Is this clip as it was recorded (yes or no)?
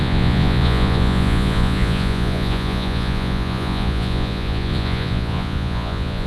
no